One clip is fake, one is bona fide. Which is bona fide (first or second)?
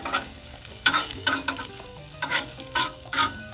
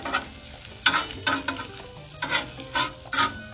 second